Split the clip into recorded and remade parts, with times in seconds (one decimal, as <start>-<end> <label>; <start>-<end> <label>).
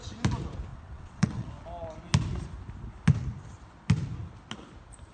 0.0-0.7 recorded; 0.7-1.5 remade; 1.5-5.1 recorded